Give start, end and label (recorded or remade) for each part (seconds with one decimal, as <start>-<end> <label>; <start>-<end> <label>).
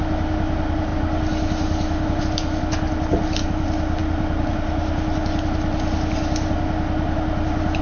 0.0-7.8 recorded